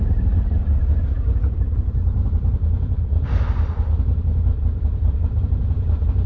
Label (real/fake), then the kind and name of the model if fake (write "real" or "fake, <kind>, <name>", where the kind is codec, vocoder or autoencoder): fake, vocoder, BigVGAN v2